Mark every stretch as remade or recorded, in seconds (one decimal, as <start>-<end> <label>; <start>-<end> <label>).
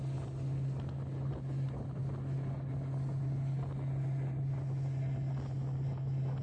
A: 0.0-6.4 recorded